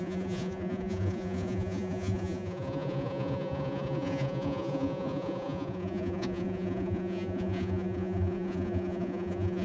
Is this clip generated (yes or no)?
yes